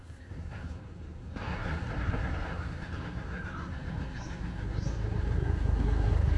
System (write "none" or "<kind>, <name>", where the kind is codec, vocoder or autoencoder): codec, SNAC